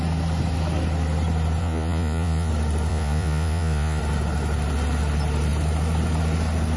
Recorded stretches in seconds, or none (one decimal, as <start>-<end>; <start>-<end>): 0.0-1.6; 2.5-2.9; 4.0-6.8